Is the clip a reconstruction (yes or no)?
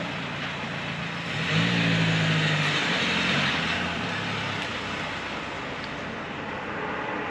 no